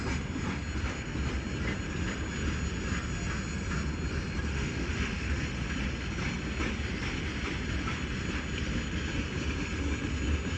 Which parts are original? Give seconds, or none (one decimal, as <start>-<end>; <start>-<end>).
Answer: 0.0-4.5; 5.4-10.6